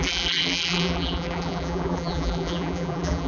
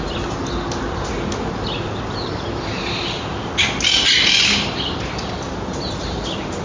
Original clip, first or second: second